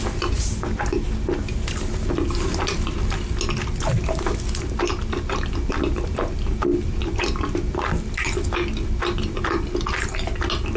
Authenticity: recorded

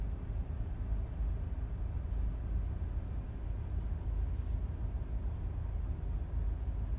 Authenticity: recorded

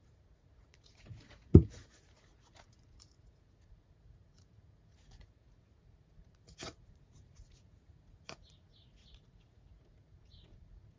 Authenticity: remade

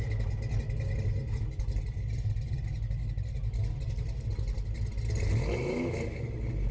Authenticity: recorded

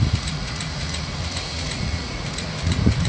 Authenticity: remade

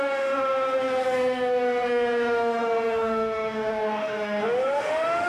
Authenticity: remade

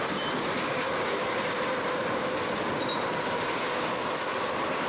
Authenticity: recorded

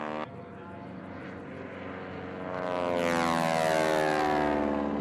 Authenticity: recorded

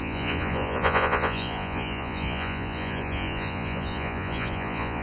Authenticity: remade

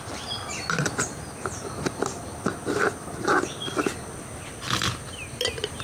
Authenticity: recorded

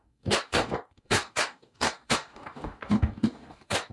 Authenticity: remade